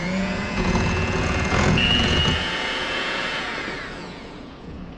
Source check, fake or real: fake